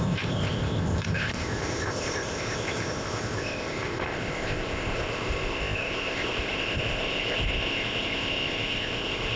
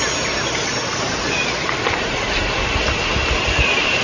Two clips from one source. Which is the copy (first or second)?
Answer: first